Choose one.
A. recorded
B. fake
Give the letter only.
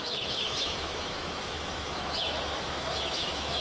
B